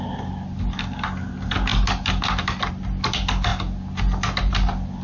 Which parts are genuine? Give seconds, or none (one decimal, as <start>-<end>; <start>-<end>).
0.0-5.0